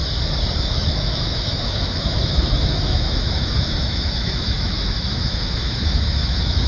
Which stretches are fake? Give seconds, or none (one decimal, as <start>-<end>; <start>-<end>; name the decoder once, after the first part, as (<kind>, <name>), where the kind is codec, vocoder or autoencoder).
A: 0.6-6.7 (autoencoder, DAC-VAE)